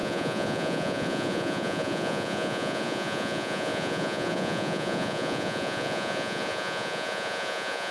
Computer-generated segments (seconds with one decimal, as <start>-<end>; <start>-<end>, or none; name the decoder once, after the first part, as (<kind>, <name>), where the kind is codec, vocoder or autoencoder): 0.0-7.9 (vocoder, Vocos)